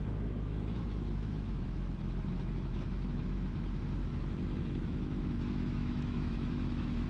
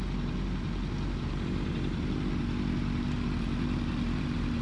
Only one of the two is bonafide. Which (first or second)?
second